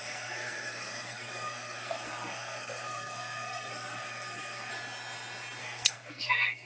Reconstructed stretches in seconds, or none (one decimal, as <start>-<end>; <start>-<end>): 0.0-4.7; 5.6-6.7